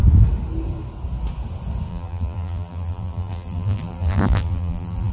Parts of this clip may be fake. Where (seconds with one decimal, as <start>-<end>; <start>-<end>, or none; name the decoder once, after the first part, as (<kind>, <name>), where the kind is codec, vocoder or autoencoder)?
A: 1.9-5.1 (vocoder, BigVGAN v2)